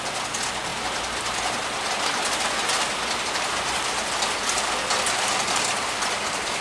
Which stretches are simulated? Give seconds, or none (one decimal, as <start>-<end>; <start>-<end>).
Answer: none